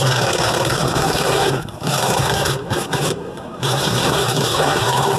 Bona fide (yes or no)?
no